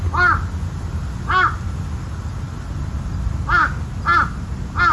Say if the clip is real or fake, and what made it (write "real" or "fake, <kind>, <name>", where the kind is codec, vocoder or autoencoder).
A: real